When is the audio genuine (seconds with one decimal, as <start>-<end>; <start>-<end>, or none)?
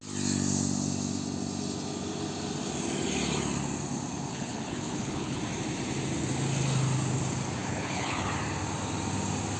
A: 0.0-4.3; 5.4-7.6; 8.3-9.6